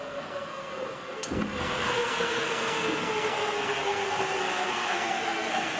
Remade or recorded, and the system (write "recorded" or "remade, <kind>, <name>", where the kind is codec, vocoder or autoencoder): remade, codec, SNAC